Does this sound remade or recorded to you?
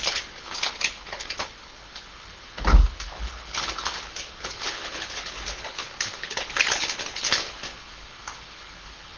remade